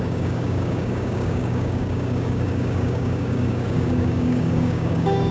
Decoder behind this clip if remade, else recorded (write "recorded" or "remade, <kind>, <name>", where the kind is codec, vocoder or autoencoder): remade, codec, DAC